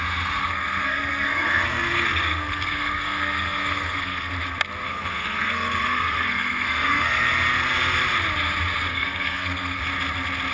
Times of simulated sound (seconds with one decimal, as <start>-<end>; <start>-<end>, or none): 0.4-4.3; 4.9-7.3; 8.9-9.8